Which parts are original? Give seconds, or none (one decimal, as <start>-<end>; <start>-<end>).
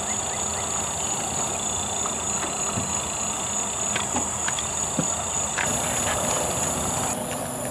0.0-0.5; 1.5-7.7